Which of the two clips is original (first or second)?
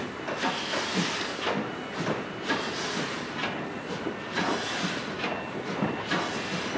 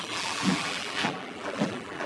first